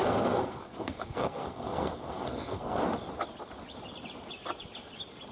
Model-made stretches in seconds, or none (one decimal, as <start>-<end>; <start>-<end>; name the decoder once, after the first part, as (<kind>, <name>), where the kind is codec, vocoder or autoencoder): 0.0-2.8 (codec, SNAC)